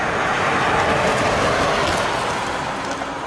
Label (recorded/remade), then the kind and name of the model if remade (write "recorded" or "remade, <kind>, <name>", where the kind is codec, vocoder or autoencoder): recorded